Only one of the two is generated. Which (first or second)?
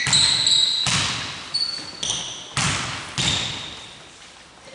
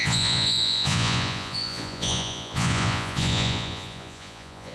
second